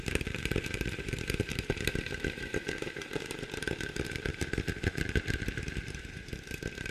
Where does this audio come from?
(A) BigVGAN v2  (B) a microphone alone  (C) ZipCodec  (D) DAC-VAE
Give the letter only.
A